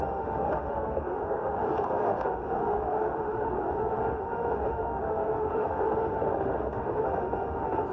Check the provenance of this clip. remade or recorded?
remade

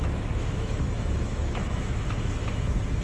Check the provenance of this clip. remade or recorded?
remade